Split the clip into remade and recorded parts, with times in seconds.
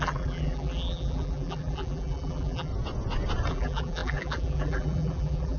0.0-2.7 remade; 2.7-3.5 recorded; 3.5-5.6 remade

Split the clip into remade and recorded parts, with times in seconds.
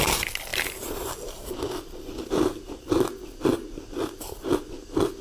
0.0-0.5 recorded; 0.5-1.6 remade; 1.6-5.2 recorded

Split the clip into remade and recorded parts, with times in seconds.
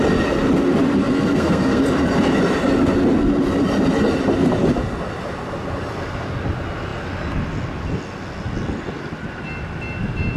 0.0-1.0 recorded; 1.0-1.8 remade; 1.8-10.4 recorded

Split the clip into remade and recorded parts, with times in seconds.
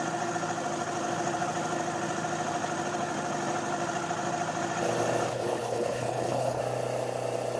0.0-5.3 recorded; 5.3-6.6 remade; 6.6-7.6 recorded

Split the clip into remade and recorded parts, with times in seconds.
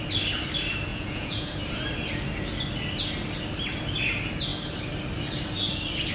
0.0-0.9 recorded; 0.9-1.6 remade; 1.6-6.1 recorded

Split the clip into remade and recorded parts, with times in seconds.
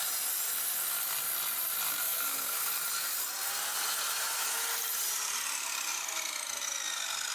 0.0-2.0 recorded; 2.0-2.7 remade; 2.7-7.3 recorded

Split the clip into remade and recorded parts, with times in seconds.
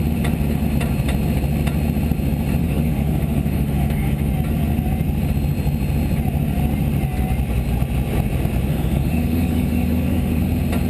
0.0-2.6 recorded; 2.6-4.3 remade; 4.3-8.7 recorded; 8.7-10.4 remade; 10.4-10.9 recorded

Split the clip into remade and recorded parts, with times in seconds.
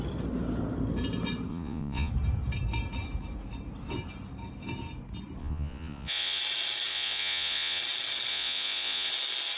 0.0-1.5 recorded; 1.5-2.1 remade; 2.1-5.4 recorded; 5.4-6.4 remade; 6.4-6.9 recorded; 6.9-7.8 remade; 7.8-8.3 recorded; 8.3-9.1 remade; 9.1-9.6 recorded